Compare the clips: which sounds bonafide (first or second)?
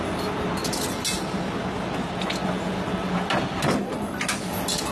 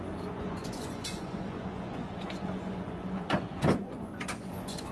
first